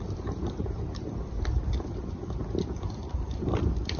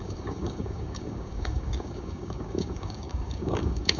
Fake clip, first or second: second